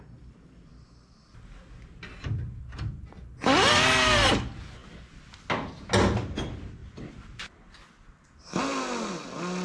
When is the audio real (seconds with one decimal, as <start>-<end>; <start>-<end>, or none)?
0.0-9.6